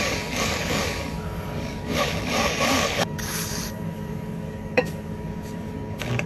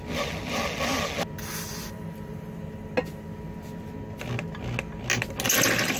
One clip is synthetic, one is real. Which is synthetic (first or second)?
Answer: first